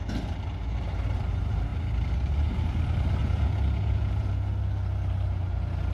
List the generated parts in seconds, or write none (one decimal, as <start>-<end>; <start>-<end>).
3.2-4.3

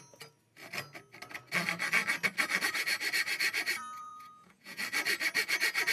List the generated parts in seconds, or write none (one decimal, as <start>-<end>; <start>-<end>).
4.0-4.8

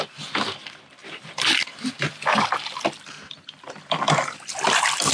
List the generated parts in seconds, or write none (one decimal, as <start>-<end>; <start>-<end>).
none

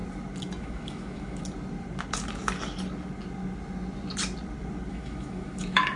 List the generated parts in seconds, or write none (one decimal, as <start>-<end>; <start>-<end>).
0.6-1.4; 4.9-6.0

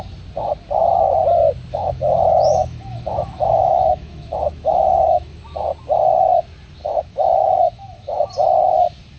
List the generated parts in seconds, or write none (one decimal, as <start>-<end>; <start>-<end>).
1.7-5.4; 6.8-8.3

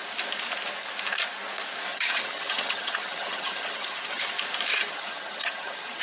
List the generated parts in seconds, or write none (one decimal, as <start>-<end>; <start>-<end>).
1.9-4.2; 4.7-6.0

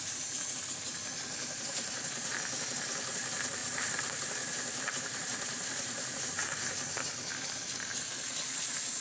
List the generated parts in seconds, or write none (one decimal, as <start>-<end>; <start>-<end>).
3.6-6.2